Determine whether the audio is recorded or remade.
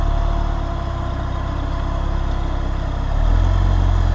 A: recorded